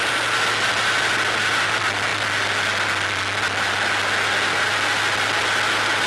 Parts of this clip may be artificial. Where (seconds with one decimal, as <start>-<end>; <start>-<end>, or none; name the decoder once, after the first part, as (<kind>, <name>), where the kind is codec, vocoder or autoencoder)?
none